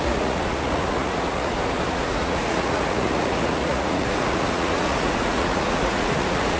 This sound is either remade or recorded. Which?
remade